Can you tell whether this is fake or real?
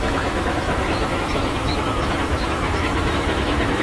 fake